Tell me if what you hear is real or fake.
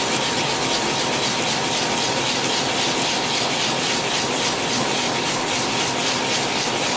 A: real